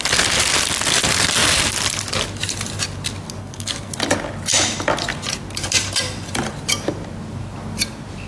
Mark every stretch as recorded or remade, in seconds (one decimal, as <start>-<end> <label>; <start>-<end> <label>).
0.0-3.4 recorded; 3.4-3.9 remade; 3.9-8.3 recorded